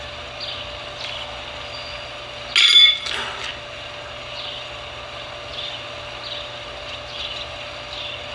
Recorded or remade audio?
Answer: recorded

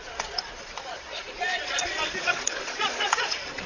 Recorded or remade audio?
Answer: remade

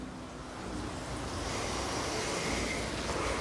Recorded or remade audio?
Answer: recorded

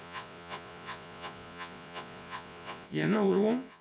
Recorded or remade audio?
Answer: remade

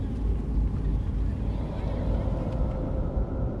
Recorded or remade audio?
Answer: recorded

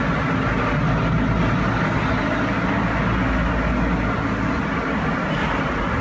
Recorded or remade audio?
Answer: recorded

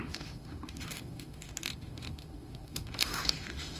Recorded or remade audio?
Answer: remade